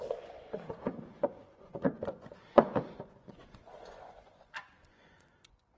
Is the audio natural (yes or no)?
no